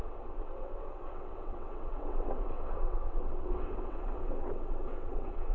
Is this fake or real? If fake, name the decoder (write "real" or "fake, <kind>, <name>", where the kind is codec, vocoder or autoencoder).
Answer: fake, vocoder, WaveNeXt